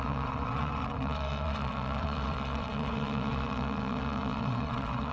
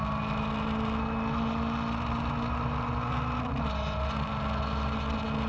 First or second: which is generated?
first